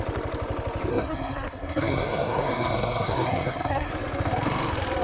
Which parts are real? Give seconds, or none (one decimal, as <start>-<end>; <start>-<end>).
0.0-0.9; 3.9-5.0